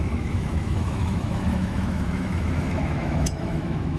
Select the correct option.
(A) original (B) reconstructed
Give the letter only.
B